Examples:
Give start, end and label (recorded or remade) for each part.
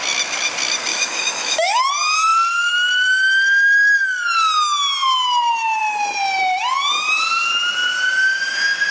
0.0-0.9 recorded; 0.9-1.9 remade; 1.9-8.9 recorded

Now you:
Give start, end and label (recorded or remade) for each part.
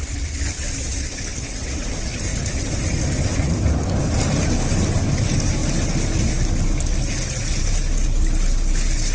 0.0-9.1 recorded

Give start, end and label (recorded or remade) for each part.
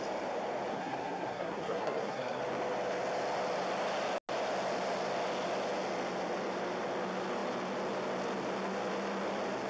0.0-0.7 recorded; 0.7-2.4 remade; 2.4-9.7 recorded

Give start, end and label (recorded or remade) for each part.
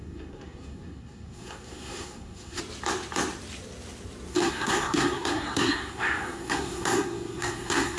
0.0-2.6 remade; 2.6-4.3 recorded; 4.3-8.0 remade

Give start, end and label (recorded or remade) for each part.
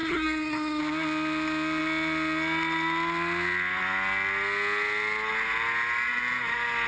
0.0-0.8 remade; 0.8-6.9 recorded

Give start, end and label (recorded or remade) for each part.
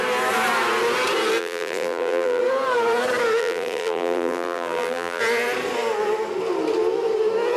0.0-1.4 recorded; 1.4-2.4 remade; 2.4-3.4 recorded; 3.4-5.2 remade; 5.2-7.6 recorded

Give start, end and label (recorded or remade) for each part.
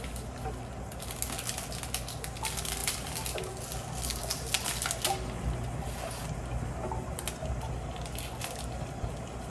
0.0-9.5 recorded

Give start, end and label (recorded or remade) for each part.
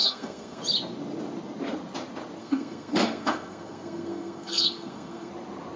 0.0-0.6 remade; 0.6-2.4 recorded; 2.4-5.3 remade; 5.3-5.8 recorded